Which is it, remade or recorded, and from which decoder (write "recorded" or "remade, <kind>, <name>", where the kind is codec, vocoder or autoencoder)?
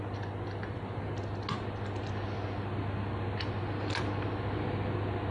recorded